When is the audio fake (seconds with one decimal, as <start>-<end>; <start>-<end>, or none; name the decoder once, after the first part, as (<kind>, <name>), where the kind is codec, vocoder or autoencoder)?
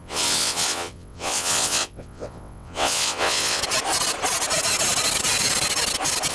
0.0-3.6 (vocoder, WaveNeXt)